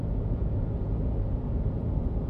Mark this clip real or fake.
fake